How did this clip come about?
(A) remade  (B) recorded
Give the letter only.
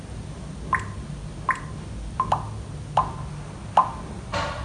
B